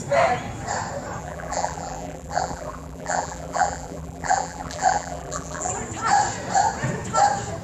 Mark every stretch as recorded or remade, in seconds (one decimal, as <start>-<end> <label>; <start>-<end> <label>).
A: 0.0-1.2 recorded; 1.2-5.7 remade; 5.7-7.6 recorded